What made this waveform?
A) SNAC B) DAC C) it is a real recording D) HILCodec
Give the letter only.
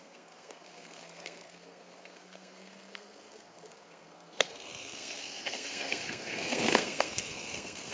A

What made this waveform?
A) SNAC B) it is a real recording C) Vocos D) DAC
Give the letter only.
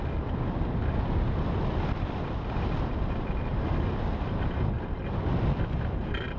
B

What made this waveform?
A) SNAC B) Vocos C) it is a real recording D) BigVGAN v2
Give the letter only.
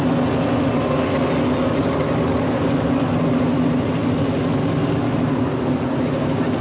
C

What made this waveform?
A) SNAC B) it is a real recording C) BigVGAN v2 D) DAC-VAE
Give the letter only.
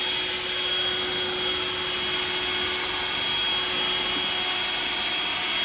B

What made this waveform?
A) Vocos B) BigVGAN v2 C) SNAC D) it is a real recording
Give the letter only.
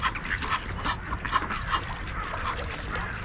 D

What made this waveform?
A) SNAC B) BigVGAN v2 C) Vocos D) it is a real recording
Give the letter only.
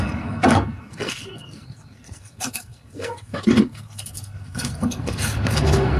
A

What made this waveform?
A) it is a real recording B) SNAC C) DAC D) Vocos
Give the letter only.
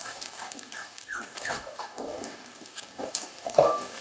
C